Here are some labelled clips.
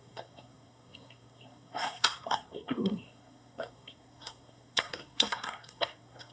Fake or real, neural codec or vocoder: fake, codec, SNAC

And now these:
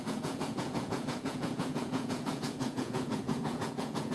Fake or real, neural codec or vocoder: fake, vocoder, Vocos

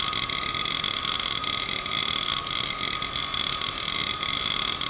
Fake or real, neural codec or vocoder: real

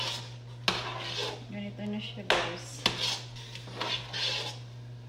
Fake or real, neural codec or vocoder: real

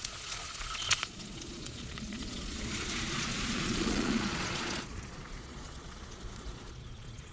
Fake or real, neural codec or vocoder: fake, vocoder, Vocos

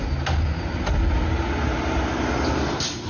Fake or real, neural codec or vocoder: real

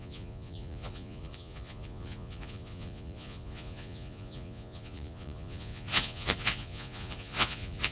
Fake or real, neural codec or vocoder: fake, vocoder, Vocos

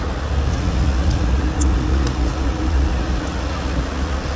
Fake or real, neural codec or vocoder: fake, vocoder, Vocos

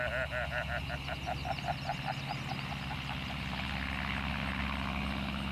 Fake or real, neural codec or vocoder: real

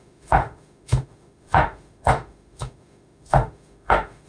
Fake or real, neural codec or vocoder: fake, autoencoder, DAC-VAE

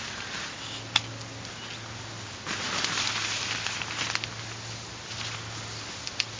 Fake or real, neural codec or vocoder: real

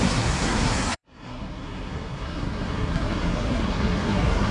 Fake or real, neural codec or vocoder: fake, codec, SNAC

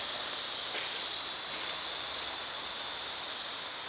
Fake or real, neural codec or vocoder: real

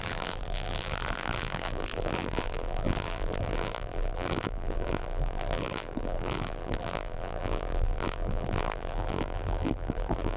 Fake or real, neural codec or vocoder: fake, vocoder, BigVGAN v2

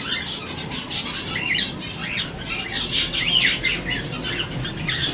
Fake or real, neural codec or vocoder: real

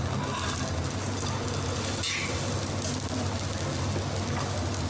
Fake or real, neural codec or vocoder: real